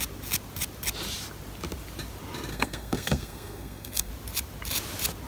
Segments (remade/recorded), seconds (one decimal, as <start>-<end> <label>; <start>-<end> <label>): 0.0-2.5 recorded; 2.5-4.1 remade; 4.1-5.3 recorded